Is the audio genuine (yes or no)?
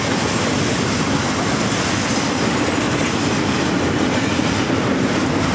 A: yes